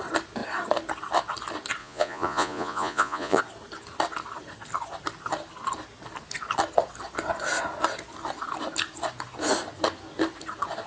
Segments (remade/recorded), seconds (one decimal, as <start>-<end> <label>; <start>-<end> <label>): 0.0-1.8 recorded; 1.8-3.4 remade; 3.4-10.9 recorded